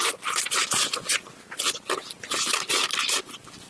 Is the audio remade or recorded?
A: recorded